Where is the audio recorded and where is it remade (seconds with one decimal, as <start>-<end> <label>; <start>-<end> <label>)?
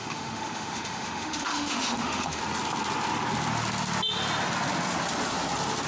0.0-2.4 remade; 2.4-5.9 recorded